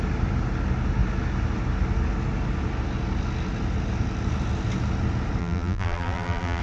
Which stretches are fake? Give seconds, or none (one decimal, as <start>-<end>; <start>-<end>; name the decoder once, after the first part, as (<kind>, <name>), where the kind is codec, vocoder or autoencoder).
5.4-6.6 (vocoder, BigVGAN v2)